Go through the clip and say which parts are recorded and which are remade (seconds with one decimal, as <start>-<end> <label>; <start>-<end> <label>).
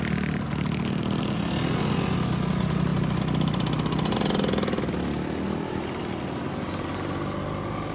0.0-7.9 recorded